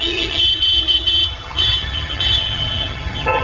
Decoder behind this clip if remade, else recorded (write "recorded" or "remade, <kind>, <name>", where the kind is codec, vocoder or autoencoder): remade, vocoder, HiFi-GAN